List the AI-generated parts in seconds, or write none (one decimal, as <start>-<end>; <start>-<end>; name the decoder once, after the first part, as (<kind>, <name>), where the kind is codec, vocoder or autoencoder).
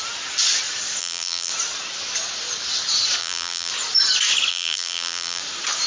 1.0-1.5 (vocoder, BigVGAN v2); 3.2-3.7; 4.5-5.4